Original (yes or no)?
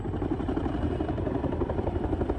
yes